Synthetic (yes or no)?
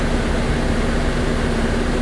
no